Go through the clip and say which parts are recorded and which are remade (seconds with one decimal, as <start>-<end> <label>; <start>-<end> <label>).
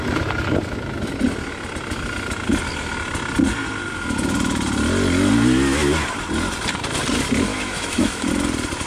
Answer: 0.0-7.5 recorded; 7.5-8.3 remade; 8.3-8.9 recorded